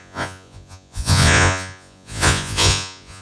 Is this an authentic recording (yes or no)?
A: no